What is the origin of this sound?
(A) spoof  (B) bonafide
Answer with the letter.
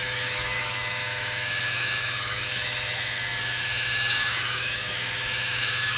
A